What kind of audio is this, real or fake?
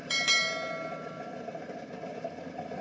real